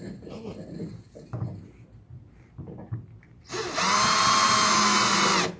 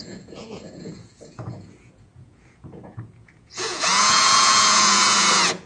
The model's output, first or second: second